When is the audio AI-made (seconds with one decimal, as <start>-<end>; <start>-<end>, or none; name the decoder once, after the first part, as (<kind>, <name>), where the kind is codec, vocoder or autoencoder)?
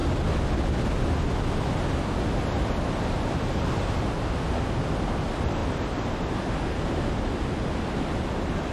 none